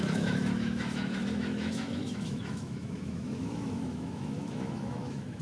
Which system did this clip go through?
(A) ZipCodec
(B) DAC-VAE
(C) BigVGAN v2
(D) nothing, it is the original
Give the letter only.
B